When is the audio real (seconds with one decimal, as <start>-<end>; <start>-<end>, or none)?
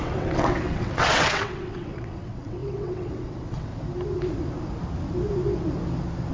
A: 3.7-6.3